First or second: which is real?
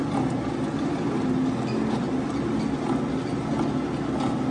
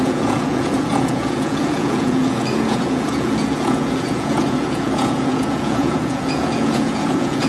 first